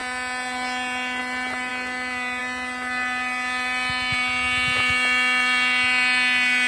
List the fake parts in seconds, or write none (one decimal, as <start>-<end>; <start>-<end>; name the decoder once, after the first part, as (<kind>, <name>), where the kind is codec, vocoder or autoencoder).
none